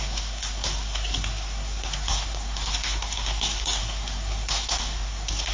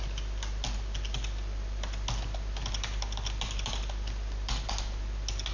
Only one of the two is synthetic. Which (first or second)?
first